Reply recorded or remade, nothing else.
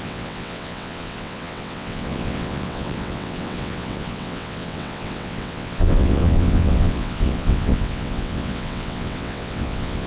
remade